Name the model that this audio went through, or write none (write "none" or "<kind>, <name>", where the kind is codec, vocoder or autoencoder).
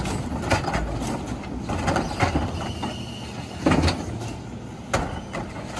none